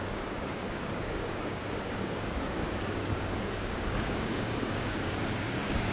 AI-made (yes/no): yes